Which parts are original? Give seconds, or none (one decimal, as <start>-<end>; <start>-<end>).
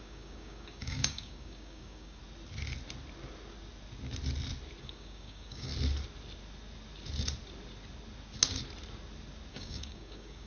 2.2-4.8; 5.7-9.5